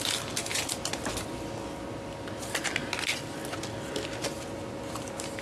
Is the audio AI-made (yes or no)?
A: no